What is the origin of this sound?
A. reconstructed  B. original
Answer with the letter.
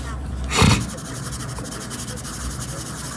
B